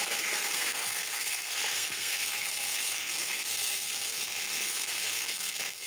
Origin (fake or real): fake